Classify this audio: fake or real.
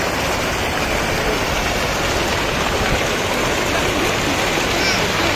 real